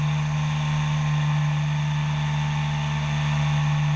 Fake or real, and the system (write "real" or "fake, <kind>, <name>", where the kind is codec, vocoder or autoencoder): real